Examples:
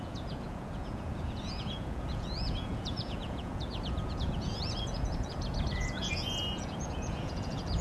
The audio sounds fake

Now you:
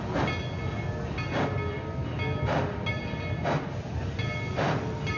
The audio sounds real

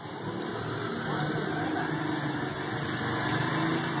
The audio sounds real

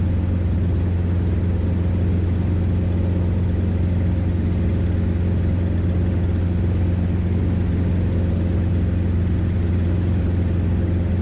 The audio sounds real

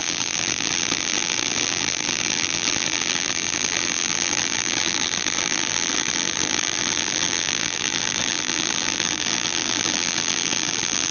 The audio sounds fake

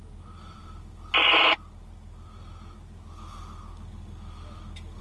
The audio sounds real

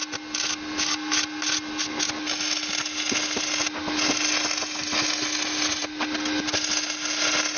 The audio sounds real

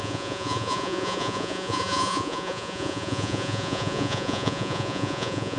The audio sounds fake